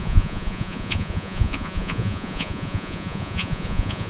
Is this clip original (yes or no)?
no